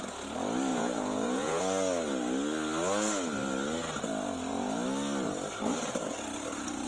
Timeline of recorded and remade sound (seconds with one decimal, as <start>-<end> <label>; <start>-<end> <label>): 0.0-0.7 recorded; 0.7-1.6 remade; 1.6-6.9 recorded